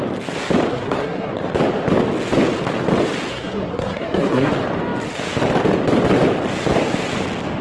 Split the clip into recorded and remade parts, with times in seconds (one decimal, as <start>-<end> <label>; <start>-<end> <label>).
0.0-0.7 recorded; 0.7-1.3 remade; 1.3-3.3 recorded; 3.3-4.5 remade; 4.5-7.6 recorded